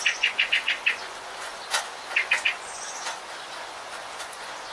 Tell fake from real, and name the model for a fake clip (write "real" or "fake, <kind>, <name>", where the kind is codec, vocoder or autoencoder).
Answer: fake, vocoder, Vocos